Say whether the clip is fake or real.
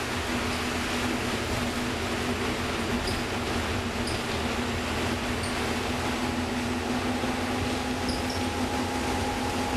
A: real